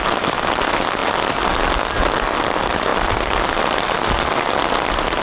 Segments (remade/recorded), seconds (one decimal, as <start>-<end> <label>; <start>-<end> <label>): 0.0-5.2 recorded